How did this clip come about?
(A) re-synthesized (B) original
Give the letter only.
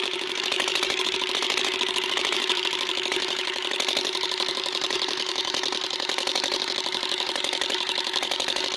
A